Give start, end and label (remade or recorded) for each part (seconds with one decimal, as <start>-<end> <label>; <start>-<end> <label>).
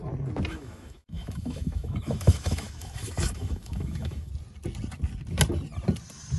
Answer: 0.0-0.5 recorded; 0.5-4.3 remade; 4.3-6.4 recorded